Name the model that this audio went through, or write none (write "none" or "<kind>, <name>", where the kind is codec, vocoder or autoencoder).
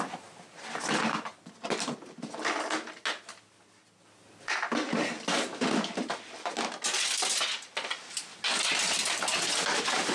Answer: none